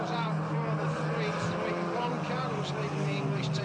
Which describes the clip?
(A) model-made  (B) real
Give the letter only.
B